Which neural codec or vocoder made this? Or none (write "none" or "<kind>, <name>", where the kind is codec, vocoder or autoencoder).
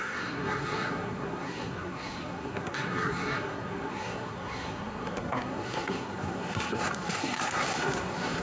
codec, SNAC